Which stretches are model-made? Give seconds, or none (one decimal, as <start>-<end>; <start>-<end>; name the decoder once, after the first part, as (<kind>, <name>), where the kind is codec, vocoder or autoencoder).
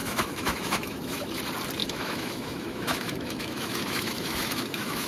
0.0-1.4 (autoencoder, DAC-VAE); 1.8-5.1